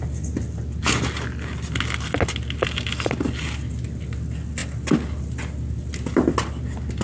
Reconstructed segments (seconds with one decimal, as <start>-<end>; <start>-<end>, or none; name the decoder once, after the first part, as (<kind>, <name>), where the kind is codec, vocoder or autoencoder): none